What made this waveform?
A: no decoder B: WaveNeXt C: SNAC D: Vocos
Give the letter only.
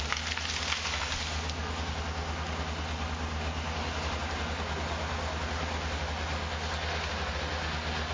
A